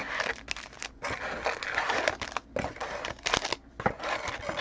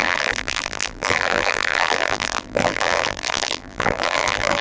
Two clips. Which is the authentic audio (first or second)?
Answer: first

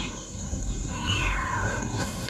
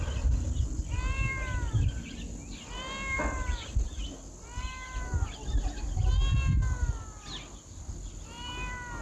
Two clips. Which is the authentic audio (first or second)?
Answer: second